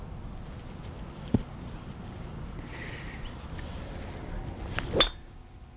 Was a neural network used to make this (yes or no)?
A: no